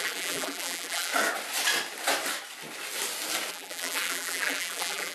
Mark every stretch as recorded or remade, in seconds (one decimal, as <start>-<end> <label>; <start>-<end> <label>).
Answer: 0.0-1.1 remade; 1.1-3.5 recorded; 3.5-5.1 remade